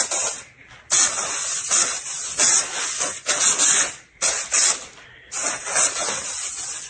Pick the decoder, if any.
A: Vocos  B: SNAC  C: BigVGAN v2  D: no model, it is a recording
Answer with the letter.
D